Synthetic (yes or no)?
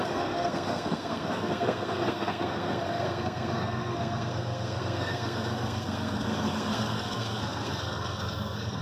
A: yes